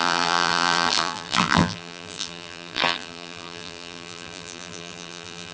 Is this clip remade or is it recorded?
remade